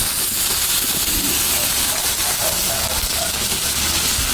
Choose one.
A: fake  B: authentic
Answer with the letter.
B